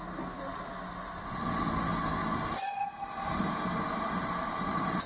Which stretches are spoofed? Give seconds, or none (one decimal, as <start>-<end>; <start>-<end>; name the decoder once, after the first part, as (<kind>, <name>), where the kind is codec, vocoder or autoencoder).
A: none